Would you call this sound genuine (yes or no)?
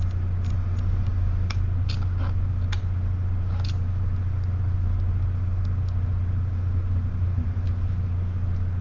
yes